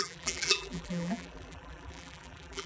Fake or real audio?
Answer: fake